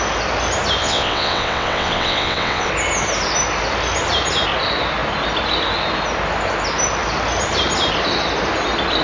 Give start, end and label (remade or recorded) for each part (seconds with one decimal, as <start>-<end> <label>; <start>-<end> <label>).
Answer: 0.0-0.8 recorded; 0.8-2.7 remade; 2.7-9.0 recorded